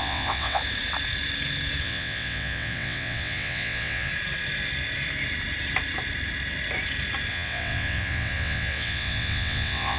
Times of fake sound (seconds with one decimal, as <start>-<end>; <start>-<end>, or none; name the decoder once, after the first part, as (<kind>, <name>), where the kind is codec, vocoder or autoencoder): 0.0-0.6 (vocoder, WaveNeXt); 1.8-4.1; 7.3-10.0

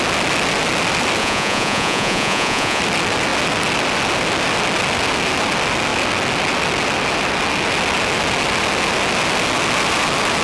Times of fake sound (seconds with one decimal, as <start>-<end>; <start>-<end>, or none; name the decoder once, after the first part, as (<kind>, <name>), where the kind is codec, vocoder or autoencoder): 1.2-2.8 (vocoder, Vocos)